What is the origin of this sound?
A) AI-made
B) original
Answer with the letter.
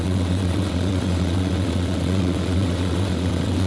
A